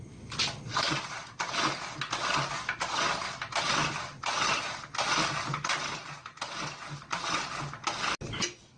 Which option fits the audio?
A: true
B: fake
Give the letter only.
A